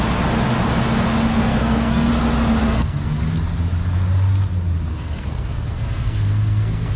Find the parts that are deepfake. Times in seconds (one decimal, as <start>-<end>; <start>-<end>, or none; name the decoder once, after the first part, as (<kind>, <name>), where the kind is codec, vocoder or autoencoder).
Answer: 1.3-2.1 (codec, SNAC); 2.6-3.2; 4.9-7.0